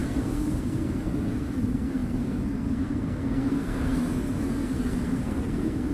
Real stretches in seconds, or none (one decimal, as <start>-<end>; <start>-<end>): none